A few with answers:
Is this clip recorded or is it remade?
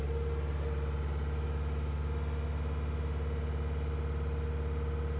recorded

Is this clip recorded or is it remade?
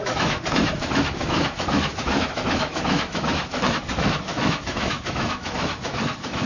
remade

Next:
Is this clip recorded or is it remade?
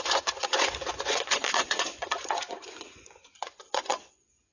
remade